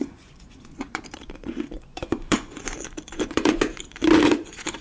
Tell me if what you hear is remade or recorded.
remade